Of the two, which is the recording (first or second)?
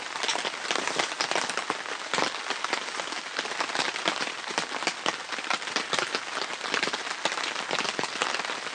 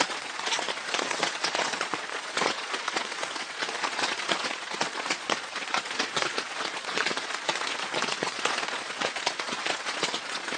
first